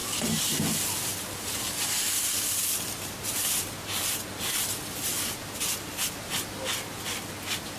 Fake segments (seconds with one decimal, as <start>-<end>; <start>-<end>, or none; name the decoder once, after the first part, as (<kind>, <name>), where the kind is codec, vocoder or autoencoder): none